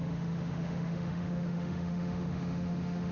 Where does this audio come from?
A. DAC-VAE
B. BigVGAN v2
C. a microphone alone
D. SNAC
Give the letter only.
A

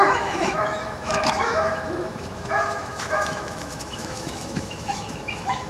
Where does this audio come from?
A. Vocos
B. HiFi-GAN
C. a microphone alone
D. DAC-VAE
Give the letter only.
D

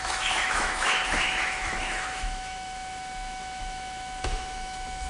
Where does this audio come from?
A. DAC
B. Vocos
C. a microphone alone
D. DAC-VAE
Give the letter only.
D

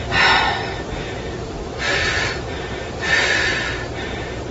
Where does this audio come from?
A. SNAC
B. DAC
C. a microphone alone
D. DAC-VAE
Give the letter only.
C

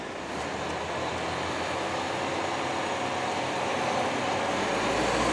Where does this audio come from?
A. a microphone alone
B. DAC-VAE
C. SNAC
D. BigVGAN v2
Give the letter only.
A